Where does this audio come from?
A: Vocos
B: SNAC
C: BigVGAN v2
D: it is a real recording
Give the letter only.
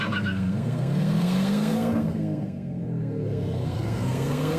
B